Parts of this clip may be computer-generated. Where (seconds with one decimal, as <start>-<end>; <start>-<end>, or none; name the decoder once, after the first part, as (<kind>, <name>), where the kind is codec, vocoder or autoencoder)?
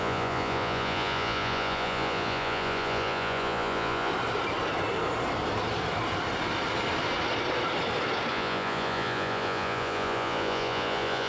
0.0-4.1 (vocoder, Vocos); 8.3-11.3